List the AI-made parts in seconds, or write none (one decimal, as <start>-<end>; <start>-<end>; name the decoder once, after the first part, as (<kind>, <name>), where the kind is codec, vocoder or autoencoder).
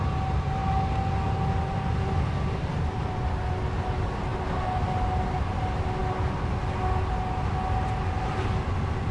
none